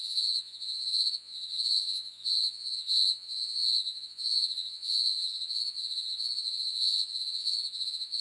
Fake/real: fake